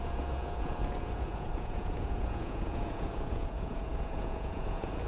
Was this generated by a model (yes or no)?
yes